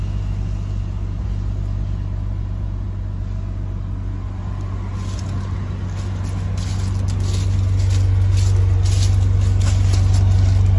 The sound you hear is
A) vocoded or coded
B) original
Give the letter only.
B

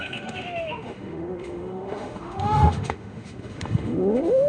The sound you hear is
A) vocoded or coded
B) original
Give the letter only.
A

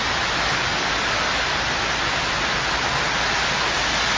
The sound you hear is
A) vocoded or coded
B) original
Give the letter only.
B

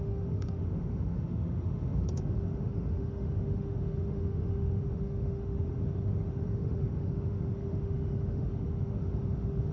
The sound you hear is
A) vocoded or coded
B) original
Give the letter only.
A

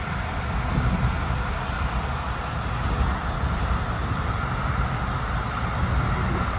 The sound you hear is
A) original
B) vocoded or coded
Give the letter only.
A